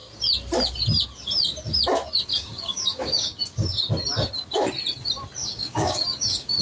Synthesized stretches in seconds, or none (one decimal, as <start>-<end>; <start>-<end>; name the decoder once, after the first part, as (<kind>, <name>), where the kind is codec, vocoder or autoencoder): 2.3-3.4 (codec, DAC); 5.4-6.6